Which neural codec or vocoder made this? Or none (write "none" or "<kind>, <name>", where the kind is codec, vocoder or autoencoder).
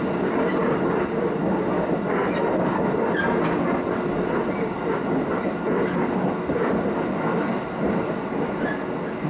none